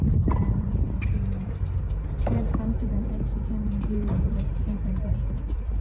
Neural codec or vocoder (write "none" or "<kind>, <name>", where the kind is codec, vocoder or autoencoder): vocoder, BigVGAN v2